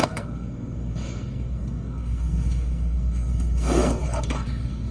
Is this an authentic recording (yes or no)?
no